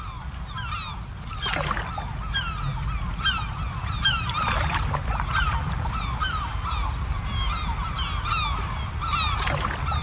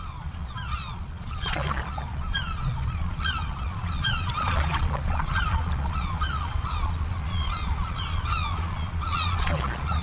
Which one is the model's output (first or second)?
second